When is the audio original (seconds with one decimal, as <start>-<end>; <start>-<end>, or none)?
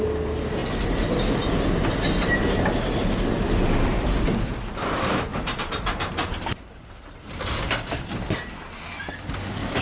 0.0-5.3; 9.1-9.8